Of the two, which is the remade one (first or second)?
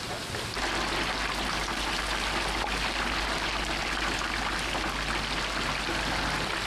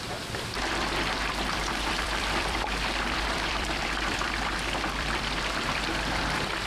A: second